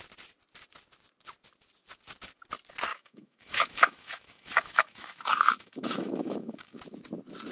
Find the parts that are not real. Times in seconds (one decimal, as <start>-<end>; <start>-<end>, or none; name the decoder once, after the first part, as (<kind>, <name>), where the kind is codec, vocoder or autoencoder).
2.9-6.8 (autoencoder, DAC-VAE)